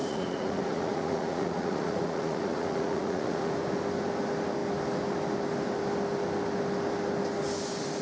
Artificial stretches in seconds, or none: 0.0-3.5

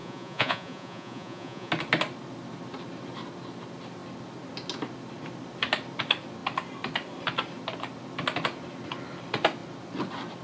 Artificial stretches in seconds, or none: 0.0-1.7

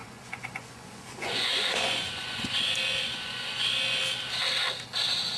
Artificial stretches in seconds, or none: 0.0-4.0

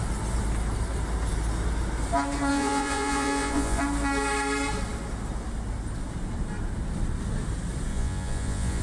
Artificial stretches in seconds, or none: 2.5-3.8; 7.9-8.8

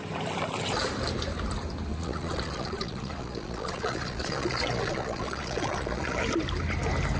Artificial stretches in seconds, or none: 1.9-6.2

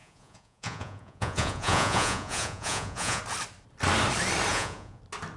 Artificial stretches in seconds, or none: 0.0-3.2; 4.5-5.0